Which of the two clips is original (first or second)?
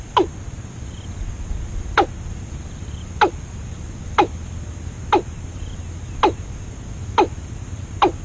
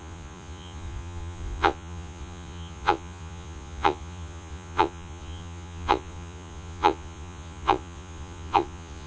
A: first